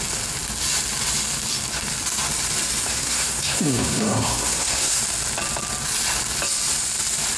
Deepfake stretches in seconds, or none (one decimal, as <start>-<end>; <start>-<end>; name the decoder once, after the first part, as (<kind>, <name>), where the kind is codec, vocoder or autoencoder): 2.9-5.0 (codec, SNAC)